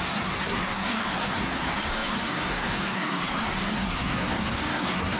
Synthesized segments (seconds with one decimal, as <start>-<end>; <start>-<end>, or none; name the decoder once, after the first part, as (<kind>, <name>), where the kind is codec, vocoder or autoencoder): 0.0-5.2 (codec, SNAC)

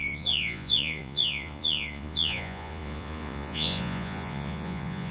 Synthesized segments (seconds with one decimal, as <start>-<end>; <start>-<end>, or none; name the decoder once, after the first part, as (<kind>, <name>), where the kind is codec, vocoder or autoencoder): 0.0-5.1 (vocoder, Vocos)

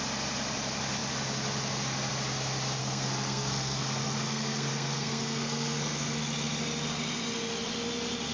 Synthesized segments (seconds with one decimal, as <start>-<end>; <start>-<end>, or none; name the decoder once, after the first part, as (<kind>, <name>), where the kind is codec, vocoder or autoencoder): 2.8-6.2 (codec, SNAC)

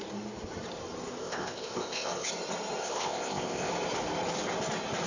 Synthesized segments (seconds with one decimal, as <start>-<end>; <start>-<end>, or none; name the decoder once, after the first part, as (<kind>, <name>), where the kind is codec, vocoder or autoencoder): 1.2-2.3 (codec, ZipCodec); 2.8-3.7

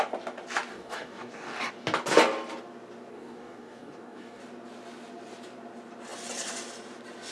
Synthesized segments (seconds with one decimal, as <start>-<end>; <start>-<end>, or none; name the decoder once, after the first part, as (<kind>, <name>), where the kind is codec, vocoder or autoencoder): 0.7-1.7 (codec, DAC); 3.1-4.4

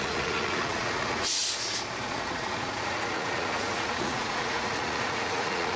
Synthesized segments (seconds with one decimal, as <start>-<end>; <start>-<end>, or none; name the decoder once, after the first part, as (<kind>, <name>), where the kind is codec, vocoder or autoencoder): 0.0-1.4 (vocoder, Vocos); 2.0-5.8

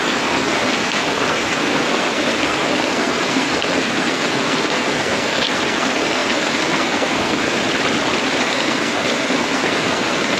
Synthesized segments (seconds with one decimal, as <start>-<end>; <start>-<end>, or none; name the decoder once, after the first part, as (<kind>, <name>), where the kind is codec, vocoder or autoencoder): 0.0-7.6 (codec, SNAC); 8.4-10.4